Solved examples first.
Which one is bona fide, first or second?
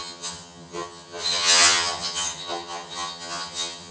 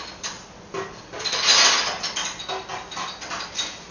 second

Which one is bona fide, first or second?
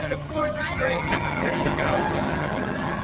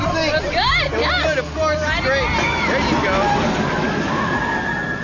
second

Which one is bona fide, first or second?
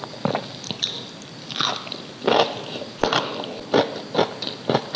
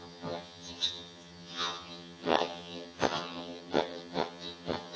first